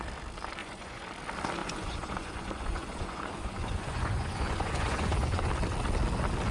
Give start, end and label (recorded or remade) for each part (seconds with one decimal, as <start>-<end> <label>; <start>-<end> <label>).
0.0-0.6 recorded; 0.6-1.1 remade; 1.1-1.6 recorded; 1.6-5.5 remade; 5.5-6.5 recorded